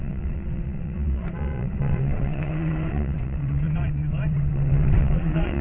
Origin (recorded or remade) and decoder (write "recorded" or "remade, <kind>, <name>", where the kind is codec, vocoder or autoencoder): remade, vocoder, WaveNeXt